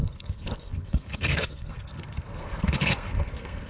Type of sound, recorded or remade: remade